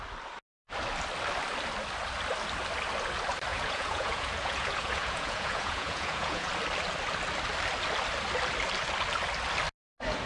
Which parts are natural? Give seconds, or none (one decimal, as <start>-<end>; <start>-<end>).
0.0-3.5; 6.5-10.3